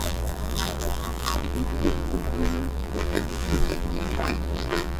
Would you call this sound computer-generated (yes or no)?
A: yes